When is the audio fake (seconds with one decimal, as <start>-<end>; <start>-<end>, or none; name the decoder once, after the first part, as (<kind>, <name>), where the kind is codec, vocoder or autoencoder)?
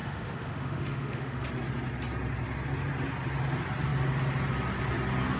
0.0-1.5 (autoencoder, DAC-VAE)